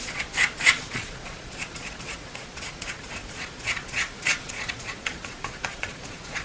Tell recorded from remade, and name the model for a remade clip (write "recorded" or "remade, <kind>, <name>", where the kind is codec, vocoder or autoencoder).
remade, vocoder, Vocos